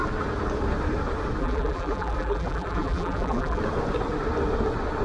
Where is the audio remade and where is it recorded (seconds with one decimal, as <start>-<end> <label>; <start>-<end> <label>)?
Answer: 0.0-1.4 recorded; 1.4-3.6 remade; 3.6-5.0 recorded